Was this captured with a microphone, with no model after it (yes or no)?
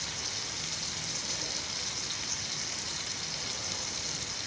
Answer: yes